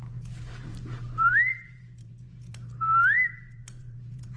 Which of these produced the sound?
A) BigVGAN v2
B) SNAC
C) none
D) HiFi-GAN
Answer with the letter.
A